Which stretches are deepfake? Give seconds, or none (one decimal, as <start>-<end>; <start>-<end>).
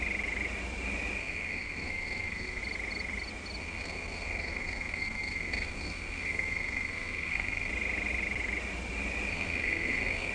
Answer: 1.2-2.6; 3.6-7.7; 9.3-10.3